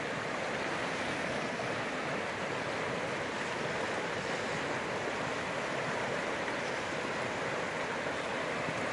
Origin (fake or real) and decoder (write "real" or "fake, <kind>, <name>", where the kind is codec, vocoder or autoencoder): real